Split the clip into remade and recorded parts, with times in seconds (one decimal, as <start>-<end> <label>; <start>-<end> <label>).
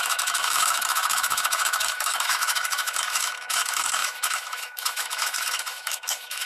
0.0-6.5 remade